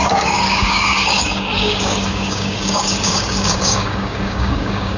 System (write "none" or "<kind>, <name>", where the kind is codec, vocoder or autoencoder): codec, DAC